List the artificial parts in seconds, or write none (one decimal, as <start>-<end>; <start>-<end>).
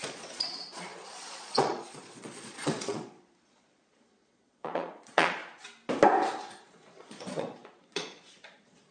0.0-5.4; 6.6-8.9